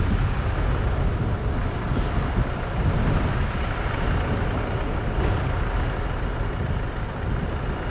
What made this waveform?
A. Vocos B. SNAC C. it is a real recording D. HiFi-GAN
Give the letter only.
C